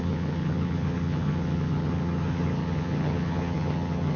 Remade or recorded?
remade